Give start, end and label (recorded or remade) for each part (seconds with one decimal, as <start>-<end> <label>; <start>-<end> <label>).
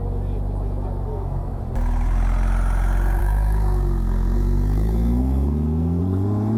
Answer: 0.0-1.1 recorded; 1.1-1.6 remade; 1.6-3.2 recorded; 3.2-6.0 remade; 6.0-6.6 recorded